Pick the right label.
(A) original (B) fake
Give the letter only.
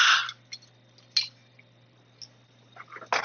A